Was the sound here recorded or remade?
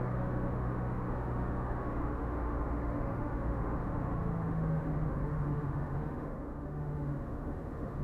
remade